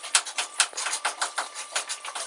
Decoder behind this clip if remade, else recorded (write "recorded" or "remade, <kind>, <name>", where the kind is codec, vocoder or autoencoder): remade, vocoder, BigVGAN v2